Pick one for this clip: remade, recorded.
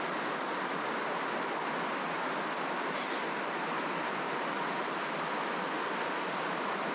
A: recorded